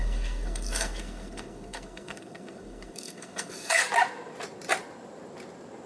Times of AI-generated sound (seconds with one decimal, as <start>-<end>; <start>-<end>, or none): 0.0-3.8